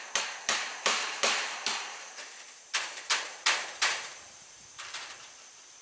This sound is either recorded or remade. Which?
remade